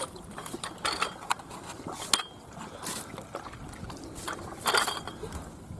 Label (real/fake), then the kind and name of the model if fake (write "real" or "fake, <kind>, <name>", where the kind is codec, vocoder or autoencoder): real